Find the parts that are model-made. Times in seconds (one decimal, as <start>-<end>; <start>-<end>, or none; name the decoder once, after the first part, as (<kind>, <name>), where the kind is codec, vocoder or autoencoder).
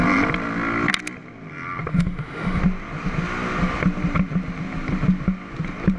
1.9-2.6 (autoencoder, DAC-VAE)